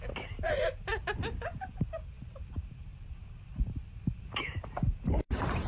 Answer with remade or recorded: remade